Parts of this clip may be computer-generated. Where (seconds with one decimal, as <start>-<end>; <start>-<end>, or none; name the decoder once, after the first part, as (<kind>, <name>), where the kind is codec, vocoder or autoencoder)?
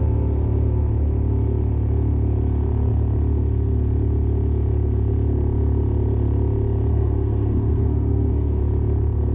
6.9-8.6 (codec, SNAC)